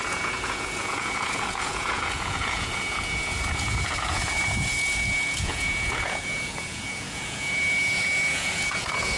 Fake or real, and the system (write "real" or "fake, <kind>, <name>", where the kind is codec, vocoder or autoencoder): fake, vocoder, Vocos